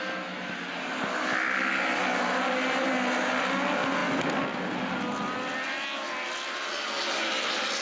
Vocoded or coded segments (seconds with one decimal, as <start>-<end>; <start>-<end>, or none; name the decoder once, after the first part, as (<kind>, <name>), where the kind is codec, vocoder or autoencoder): none